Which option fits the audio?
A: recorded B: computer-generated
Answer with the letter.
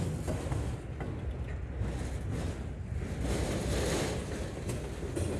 A